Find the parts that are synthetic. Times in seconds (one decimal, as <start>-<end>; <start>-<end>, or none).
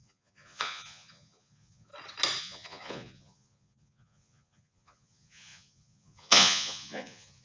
0.0-1.9; 2.4-7.4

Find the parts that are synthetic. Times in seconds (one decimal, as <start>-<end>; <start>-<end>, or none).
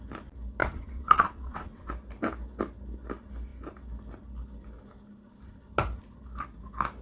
0.6-1.9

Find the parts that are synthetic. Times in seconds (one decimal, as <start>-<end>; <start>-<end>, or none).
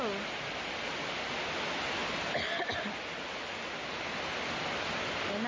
none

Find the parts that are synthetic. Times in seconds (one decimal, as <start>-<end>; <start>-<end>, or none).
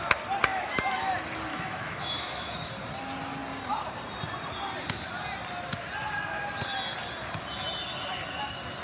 0.5-1.1; 1.5-2.7